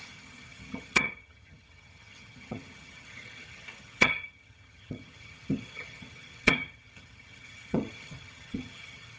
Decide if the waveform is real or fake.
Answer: fake